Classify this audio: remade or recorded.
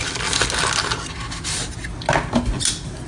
recorded